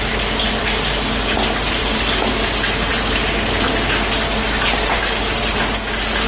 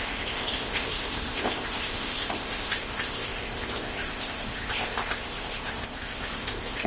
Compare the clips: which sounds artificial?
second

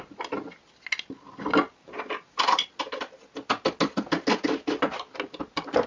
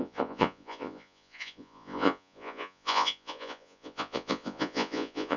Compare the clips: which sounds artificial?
second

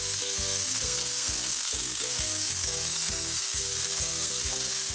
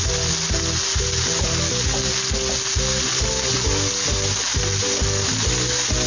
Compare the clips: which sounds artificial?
first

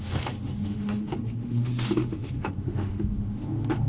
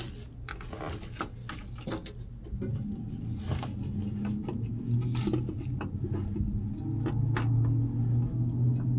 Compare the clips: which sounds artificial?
first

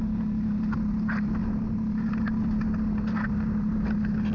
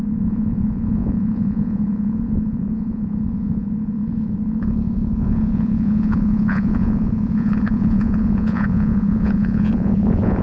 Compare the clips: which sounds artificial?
second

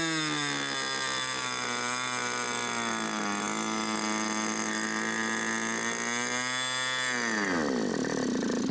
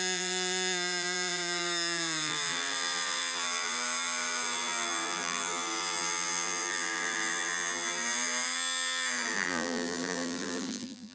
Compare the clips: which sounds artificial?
second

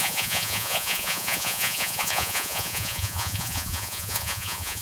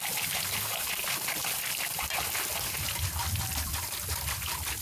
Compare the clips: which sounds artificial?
first